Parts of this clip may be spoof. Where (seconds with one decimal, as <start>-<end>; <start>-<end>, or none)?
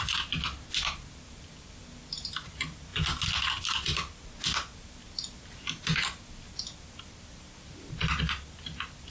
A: none